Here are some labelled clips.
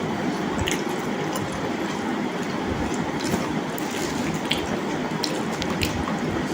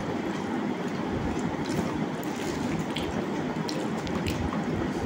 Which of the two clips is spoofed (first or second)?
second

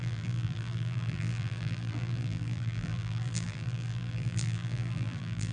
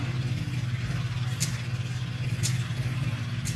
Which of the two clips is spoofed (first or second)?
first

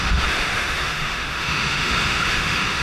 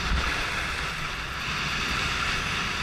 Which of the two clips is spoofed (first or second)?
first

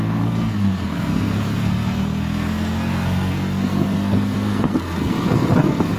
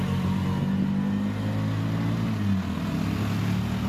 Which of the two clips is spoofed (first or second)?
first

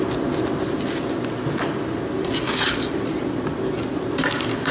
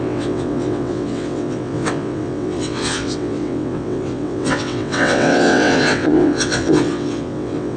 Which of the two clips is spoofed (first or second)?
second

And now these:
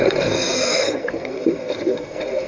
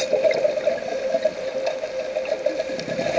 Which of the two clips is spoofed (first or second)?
first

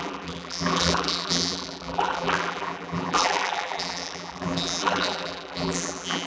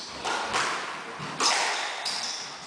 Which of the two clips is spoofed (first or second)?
first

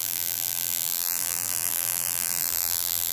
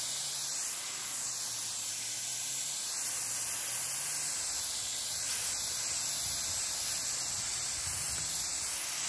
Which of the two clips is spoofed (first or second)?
first